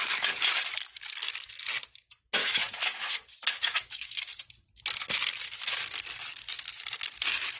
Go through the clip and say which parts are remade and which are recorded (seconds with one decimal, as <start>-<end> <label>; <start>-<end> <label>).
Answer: 0.0-2.4 recorded; 2.4-4.2 remade; 4.2-7.6 recorded